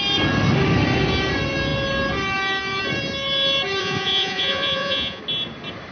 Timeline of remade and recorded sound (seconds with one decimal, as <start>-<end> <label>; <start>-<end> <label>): 0.0-3.8 recorded; 3.8-5.2 remade; 5.2-5.9 recorded